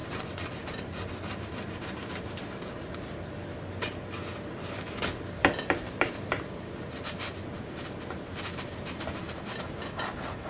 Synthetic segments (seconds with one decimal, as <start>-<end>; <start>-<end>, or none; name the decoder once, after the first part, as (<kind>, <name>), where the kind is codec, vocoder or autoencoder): 0.0-2.5 (vocoder, BigVGAN v2); 5.4-8.4